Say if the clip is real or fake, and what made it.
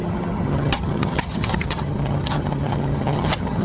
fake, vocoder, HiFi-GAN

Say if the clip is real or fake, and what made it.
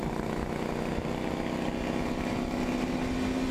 real